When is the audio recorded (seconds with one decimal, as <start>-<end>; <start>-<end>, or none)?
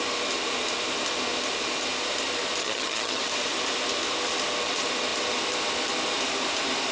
0.0-2.6; 3.2-6.9